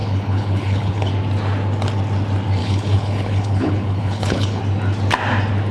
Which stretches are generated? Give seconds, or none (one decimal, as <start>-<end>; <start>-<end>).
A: 0.0-1.1; 2.6-4.6